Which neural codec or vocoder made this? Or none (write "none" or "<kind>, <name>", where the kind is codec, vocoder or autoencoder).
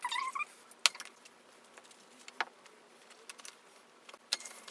none